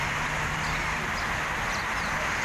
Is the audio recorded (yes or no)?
yes